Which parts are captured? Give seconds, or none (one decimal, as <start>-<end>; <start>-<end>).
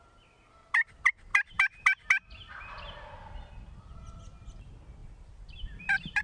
0.0-5.0